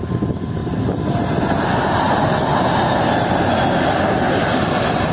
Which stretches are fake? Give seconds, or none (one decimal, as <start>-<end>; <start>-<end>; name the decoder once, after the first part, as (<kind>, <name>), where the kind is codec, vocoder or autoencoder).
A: none